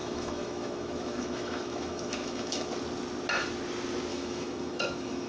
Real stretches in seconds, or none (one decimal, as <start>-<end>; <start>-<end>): 2.7-4.1